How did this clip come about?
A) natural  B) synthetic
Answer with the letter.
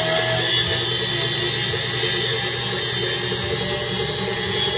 A